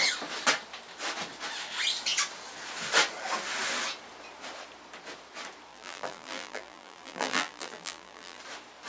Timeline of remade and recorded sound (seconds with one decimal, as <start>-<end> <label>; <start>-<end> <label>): 0.0-5.7 recorded; 5.7-8.4 remade; 8.4-8.9 recorded